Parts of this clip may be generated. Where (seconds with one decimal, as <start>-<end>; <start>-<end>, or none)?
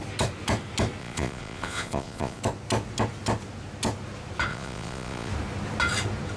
1.0-2.4; 4.5-5.3